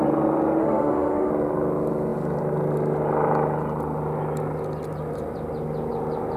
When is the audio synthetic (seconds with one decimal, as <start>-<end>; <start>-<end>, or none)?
0.6-1.3